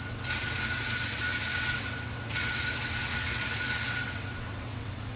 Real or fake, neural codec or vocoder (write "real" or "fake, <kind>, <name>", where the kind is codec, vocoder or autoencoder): fake, vocoder, WaveNeXt